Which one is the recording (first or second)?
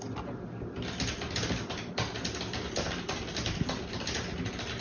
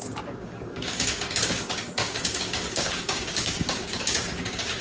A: first